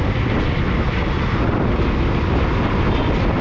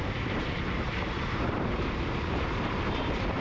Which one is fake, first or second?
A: second